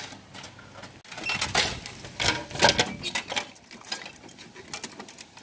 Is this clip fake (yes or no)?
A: no